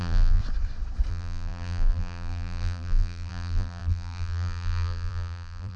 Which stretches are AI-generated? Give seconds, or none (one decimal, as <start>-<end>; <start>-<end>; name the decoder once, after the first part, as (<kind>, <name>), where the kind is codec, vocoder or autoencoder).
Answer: 0.0-0.4 (vocoder, BigVGAN v2); 1.1-5.8